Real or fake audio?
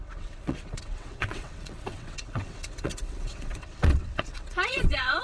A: fake